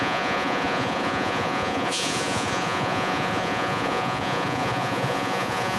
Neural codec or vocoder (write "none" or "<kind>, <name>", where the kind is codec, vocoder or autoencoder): vocoder, Vocos